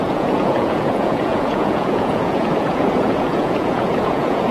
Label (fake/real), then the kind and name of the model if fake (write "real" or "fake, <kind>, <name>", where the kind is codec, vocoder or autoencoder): fake, vocoder, Vocos